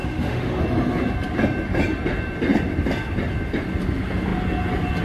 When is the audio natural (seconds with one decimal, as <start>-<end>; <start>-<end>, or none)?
0.6-5.0